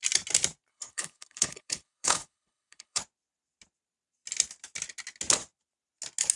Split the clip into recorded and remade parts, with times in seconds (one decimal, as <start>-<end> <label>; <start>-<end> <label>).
0.0-0.7 recorded; 0.7-3.0 remade; 3.0-6.4 recorded